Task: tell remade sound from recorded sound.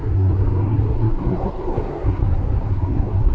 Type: remade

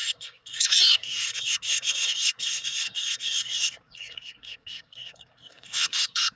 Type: remade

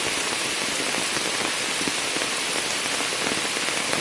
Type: recorded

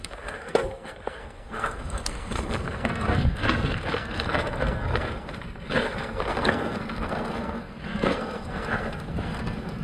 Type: remade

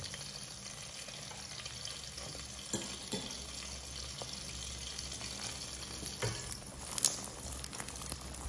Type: recorded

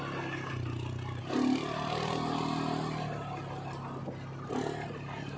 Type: recorded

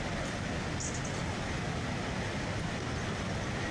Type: recorded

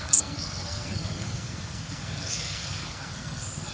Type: remade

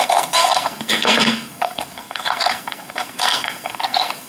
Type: remade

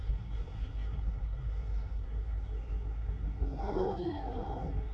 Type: remade